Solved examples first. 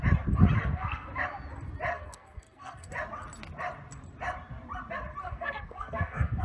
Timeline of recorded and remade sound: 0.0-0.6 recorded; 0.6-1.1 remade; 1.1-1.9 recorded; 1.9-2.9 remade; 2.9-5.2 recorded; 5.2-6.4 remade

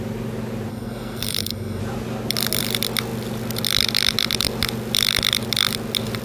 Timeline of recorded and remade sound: 0.0-0.7 recorded; 0.7-1.8 remade; 1.8-6.2 recorded

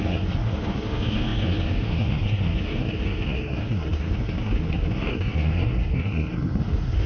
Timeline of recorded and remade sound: 0.0-7.1 remade

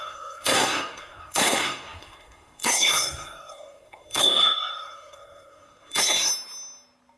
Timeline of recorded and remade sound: 0.0-6.3 remade; 6.3-7.2 recorded

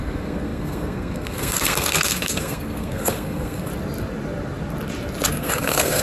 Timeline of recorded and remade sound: 0.0-3.7 remade; 3.7-5.3 recorded; 5.3-6.0 remade

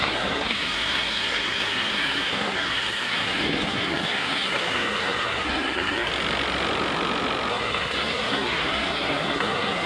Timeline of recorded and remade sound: 0.0-6.1 remade; 6.1-7.5 recorded; 7.5-9.9 remade

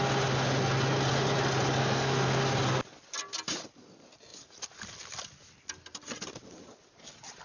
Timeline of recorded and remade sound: 0.0-1.8 recorded; 1.8-2.4 remade; 2.4-7.4 recorded

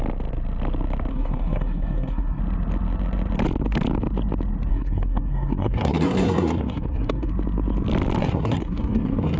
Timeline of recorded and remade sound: 0.0-1.1 recorded; 1.1-2.4 remade; 2.4-4.7 recorded; 4.7-7.3 remade; 7.3-8.2 recorded; 8.2-9.4 remade